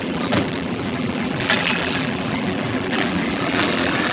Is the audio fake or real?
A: fake